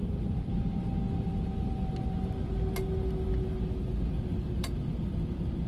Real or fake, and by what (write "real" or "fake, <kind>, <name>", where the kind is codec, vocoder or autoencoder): real